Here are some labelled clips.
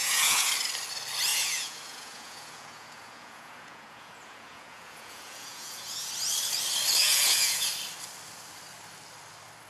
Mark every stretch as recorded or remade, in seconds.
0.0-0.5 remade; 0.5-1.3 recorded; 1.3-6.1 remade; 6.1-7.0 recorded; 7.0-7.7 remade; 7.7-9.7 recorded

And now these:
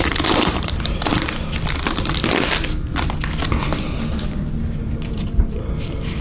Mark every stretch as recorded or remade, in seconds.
0.0-1.1 remade; 1.1-4.6 recorded; 4.6-6.2 remade

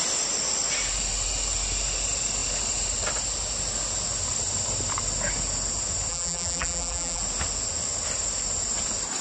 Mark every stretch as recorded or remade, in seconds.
0.0-6.1 recorded; 6.1-7.2 remade; 7.2-9.2 recorded